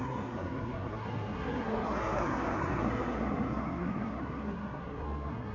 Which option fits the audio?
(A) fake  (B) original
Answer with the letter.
A